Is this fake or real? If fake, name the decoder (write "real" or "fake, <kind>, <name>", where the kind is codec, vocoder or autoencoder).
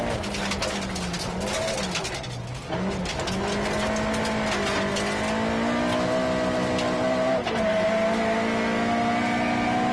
real